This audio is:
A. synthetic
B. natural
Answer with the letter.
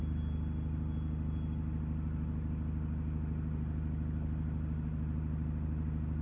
B